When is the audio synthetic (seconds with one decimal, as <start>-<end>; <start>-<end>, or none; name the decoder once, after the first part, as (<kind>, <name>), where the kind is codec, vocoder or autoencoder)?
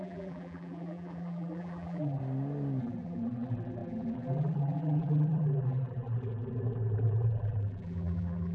0.0-2.2 (vocoder, BigVGAN v2); 2.8-8.5